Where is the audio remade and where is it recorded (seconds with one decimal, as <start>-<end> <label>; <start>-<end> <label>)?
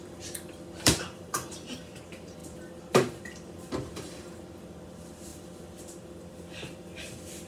0.0-7.5 remade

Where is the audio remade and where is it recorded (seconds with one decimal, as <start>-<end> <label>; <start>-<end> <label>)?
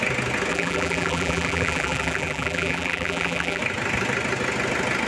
0.0-0.5 recorded; 0.5-3.6 remade; 3.6-5.1 recorded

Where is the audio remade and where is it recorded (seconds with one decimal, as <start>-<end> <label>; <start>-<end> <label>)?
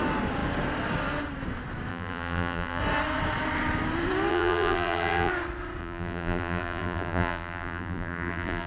0.0-1.9 recorded; 1.9-2.8 remade; 2.8-4.3 recorded; 4.3-5.3 remade; 5.3-5.8 recorded; 5.8-8.7 remade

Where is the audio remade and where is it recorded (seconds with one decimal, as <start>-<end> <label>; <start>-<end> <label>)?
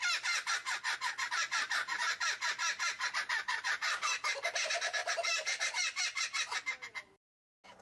0.0-7.8 recorded